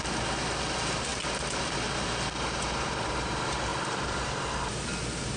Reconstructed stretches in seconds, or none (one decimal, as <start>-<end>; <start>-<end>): none